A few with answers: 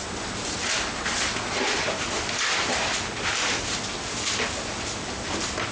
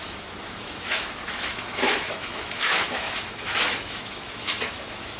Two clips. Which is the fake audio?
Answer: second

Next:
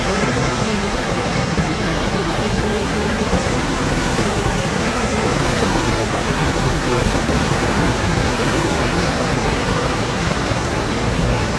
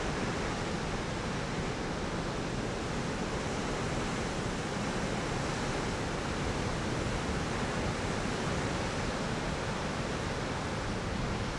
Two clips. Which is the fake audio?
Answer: first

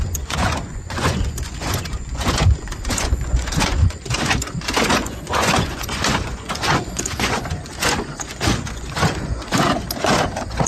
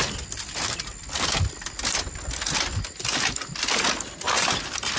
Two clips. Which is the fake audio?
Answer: first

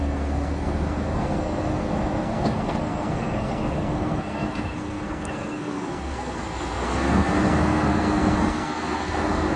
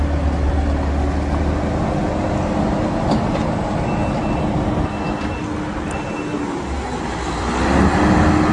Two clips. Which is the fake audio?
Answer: first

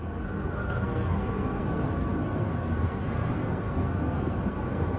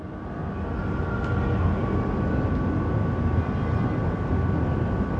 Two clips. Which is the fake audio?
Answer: first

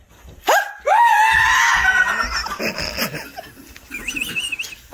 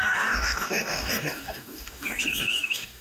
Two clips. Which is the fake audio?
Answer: second